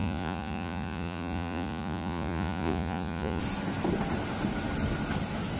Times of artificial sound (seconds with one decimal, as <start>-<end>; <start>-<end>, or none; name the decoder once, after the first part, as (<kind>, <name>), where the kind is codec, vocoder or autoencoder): 0.0-3.4 (vocoder, Vocos)